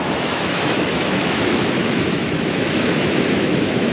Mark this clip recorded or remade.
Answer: remade